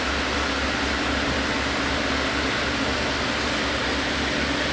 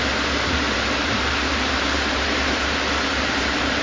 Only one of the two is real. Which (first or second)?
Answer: first